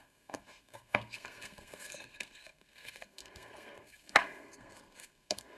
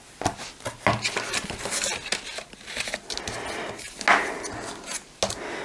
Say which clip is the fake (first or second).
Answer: first